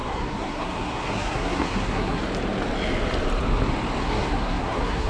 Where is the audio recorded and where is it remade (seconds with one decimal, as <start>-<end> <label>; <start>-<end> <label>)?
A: 0.0-2.2 remade; 2.2-4.0 recorded; 4.0-5.1 remade